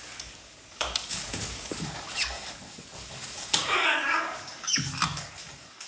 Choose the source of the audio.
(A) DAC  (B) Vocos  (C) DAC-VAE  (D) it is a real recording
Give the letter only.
A